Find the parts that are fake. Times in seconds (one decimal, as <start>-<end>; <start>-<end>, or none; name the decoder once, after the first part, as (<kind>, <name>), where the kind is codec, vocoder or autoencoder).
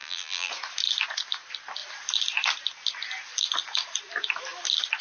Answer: 0.0-0.5 (vocoder, BigVGAN v2)